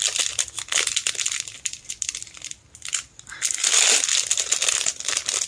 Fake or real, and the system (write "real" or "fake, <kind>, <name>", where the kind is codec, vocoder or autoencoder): real